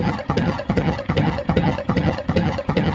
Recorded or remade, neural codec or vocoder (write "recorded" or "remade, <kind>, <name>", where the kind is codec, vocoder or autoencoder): remade, vocoder, HiFi-GAN